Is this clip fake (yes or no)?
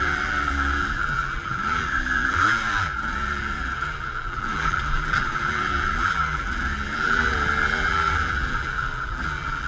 yes